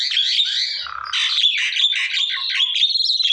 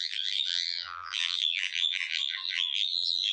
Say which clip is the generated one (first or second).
second